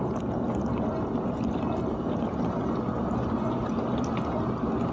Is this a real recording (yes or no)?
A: yes